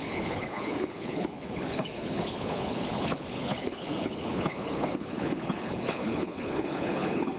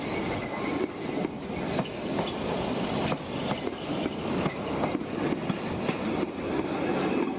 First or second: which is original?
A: second